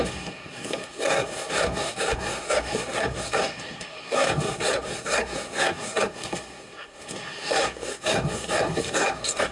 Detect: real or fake fake